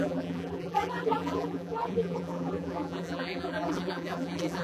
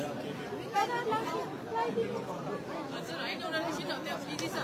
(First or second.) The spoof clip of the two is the first